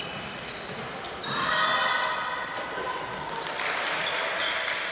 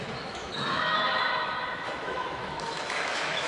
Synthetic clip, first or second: second